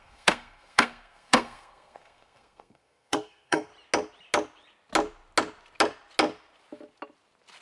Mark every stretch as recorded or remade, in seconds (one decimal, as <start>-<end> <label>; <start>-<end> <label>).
0.0-3.7 remade; 3.7-7.6 recorded